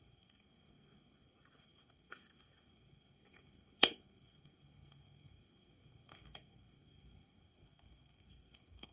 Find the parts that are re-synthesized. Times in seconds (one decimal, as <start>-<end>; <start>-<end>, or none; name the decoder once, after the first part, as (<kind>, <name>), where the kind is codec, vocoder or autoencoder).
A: 0.0-8.9 (codec, SNAC)